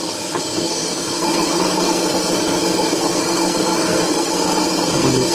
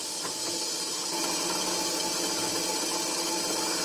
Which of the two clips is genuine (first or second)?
second